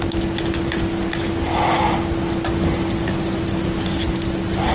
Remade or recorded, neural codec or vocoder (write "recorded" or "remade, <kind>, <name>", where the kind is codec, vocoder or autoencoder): recorded